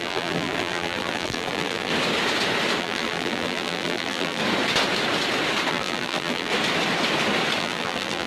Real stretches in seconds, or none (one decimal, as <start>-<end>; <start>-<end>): 1.9-2.8; 4.4-5.7; 6.5-7.6